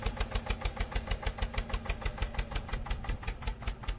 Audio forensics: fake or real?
real